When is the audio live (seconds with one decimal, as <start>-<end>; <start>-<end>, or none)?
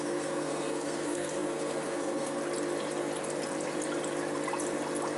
2.4-5.2